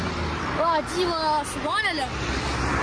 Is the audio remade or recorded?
recorded